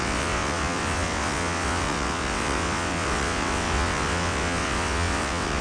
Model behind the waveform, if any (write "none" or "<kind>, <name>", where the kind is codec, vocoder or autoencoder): vocoder, WaveNeXt